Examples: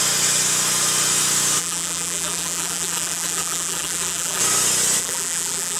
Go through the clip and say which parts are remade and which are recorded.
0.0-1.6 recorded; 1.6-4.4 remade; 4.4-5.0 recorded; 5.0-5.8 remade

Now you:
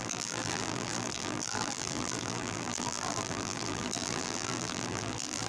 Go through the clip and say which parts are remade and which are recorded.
0.0-5.5 remade

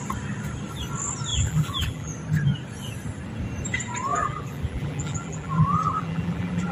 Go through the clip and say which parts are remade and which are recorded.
0.0-1.3 recorded; 1.3-2.1 remade; 2.1-4.1 recorded; 4.1-6.7 remade